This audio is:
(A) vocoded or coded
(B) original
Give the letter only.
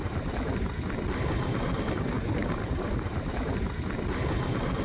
B